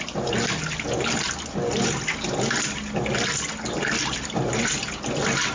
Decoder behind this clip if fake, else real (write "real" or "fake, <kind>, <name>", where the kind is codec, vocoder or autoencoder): real